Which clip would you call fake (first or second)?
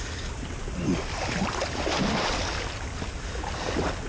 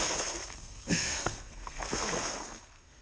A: second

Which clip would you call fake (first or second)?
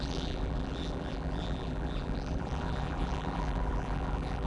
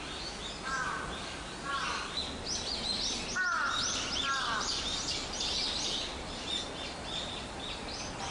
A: first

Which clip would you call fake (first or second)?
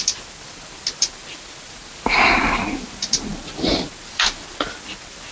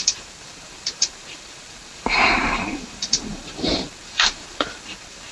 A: second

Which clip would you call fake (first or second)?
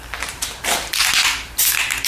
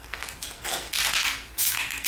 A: second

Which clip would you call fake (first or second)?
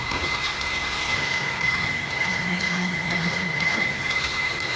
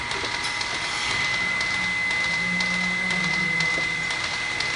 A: first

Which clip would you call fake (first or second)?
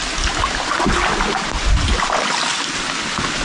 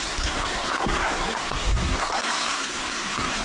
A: second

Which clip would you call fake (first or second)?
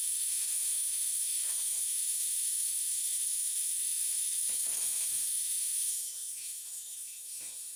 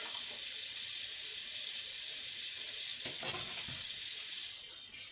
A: first